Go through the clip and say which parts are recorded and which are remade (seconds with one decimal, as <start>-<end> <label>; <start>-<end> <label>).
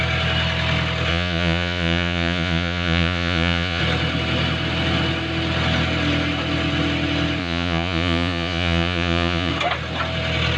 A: 0.0-1.1 recorded; 1.1-3.8 remade; 3.8-7.4 recorded; 7.4-9.5 remade; 9.5-10.6 recorded